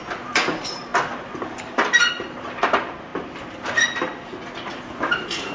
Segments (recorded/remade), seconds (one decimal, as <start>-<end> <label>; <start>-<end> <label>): 0.0-0.9 remade; 0.9-2.1 recorded; 2.1-3.1 remade; 3.1-4.7 recorded; 4.7-5.5 remade